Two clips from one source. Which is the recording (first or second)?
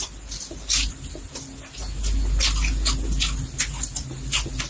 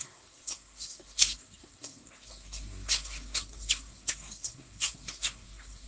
first